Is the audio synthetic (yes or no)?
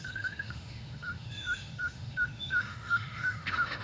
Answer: yes